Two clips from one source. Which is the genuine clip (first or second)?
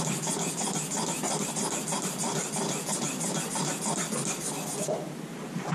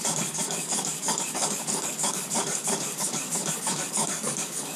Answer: first